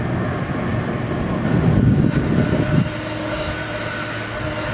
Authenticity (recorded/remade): recorded